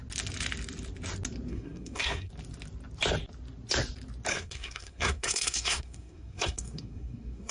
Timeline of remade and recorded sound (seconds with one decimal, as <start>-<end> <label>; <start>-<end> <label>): 0.0-1.5 recorded; 1.5-2.3 remade; 2.3-4.3 recorded; 4.3-7.5 remade